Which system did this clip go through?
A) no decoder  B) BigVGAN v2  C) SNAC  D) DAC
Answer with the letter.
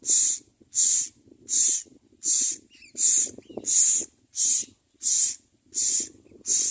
A